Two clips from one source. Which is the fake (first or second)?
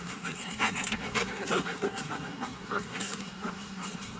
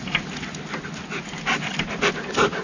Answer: first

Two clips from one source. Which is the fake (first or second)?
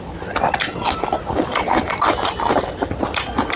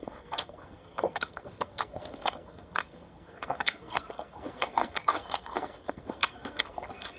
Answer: second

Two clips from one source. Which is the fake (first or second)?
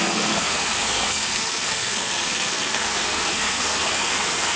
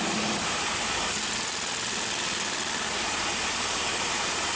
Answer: first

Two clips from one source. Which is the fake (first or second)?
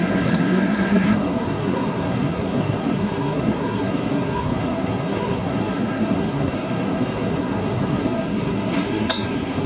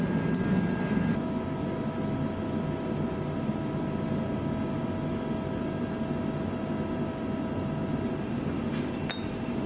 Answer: first